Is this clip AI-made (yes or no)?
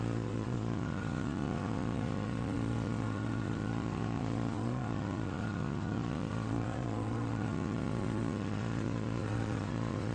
yes